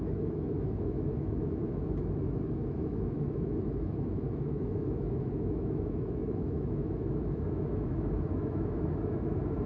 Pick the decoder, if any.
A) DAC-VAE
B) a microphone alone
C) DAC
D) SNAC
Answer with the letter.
A